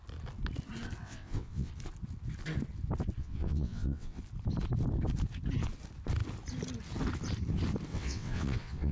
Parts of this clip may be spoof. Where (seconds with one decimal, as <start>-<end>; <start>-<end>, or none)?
1.0-1.7; 3.2-4.2; 7.9-8.9